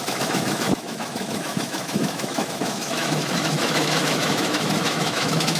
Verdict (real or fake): fake